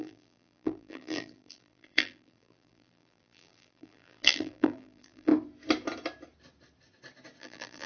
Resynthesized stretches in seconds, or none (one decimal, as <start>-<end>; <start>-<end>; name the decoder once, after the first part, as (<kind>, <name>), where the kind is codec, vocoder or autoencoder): 0.0-5.3 (vocoder, BigVGAN v2); 7.4-7.9